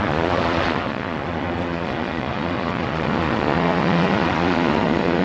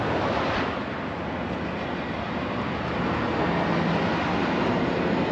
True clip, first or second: second